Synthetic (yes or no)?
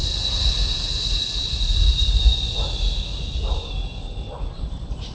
no